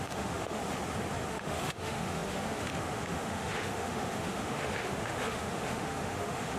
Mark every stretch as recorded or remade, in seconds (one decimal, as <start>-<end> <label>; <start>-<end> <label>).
0.0-0.6 remade; 0.6-1.3 recorded; 1.3-6.6 remade